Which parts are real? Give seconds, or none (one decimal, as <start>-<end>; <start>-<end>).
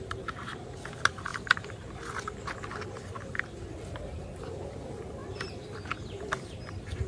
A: 0.0-7.1